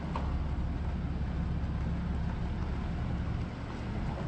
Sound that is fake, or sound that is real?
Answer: real